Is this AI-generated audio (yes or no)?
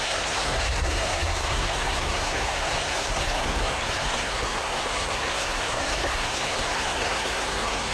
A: yes